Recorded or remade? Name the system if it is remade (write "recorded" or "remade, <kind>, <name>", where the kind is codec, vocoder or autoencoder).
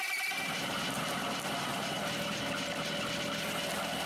recorded